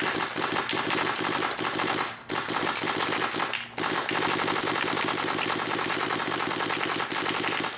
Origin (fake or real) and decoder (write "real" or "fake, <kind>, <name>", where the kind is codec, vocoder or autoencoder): real